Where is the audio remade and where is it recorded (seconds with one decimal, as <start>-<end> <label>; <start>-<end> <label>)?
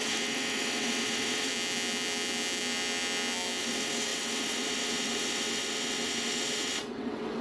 0.0-1.5 remade; 1.5-3.6 recorded; 3.6-7.4 remade